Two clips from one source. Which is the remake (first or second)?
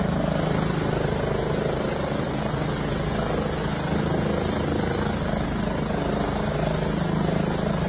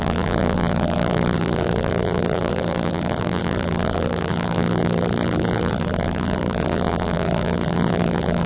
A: second